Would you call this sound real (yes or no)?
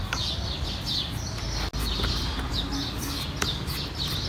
yes